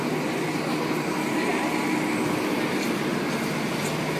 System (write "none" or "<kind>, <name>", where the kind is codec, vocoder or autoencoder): none